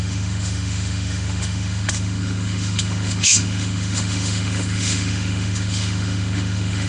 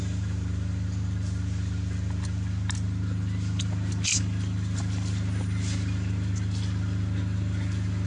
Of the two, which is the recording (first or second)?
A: second